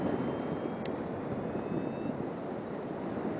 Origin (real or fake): real